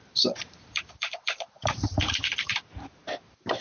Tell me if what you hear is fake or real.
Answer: fake